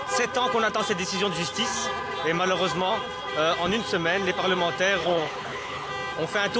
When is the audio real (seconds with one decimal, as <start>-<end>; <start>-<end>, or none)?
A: 0.0-5.0; 5.9-6.6